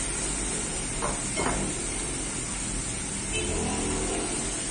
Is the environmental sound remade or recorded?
recorded